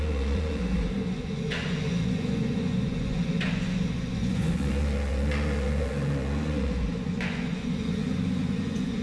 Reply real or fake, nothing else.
fake